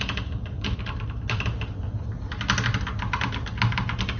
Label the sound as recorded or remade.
recorded